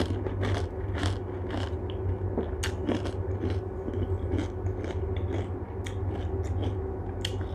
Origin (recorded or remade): recorded